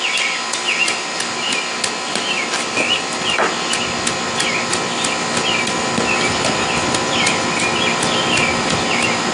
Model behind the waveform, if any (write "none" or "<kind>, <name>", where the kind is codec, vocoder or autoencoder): none